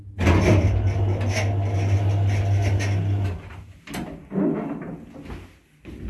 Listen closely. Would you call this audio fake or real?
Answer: real